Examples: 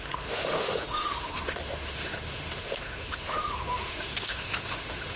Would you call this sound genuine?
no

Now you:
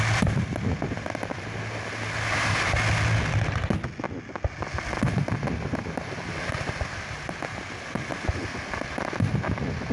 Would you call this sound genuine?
yes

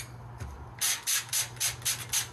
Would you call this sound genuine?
yes